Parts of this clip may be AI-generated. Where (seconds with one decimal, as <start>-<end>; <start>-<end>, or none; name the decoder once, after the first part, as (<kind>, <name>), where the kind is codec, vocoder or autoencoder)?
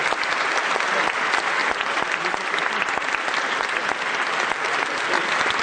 none